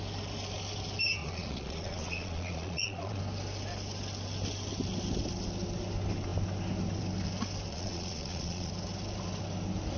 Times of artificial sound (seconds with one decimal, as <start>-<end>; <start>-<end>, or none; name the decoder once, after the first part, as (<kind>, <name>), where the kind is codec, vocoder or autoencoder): 1.2-3.2 (vocoder, Vocos); 7.7-8.7